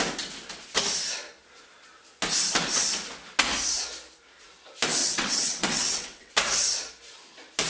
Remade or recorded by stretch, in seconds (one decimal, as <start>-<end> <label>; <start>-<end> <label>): 0.0-5.0 recorded; 5.0-6.3 remade; 6.3-7.7 recorded